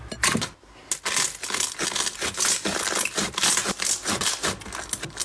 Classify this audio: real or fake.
real